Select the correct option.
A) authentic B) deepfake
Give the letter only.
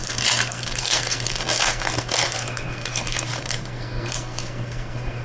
B